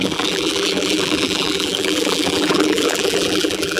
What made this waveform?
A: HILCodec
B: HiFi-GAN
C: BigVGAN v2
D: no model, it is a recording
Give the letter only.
C